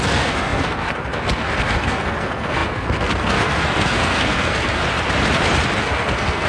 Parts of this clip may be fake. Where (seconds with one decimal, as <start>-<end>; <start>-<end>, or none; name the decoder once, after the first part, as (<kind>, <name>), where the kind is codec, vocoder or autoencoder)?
0.0-4.8 (codec, SNAC); 5.8-6.5